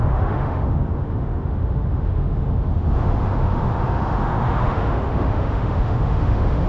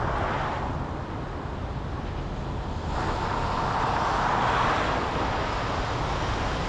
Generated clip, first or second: first